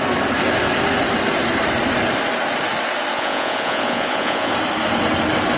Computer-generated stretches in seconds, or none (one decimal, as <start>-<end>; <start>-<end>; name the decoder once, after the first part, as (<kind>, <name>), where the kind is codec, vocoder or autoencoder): 3.1-4.5 (vocoder, Vocos)